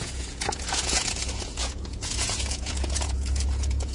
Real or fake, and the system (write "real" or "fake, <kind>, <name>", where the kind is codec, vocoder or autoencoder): fake, vocoder, Vocos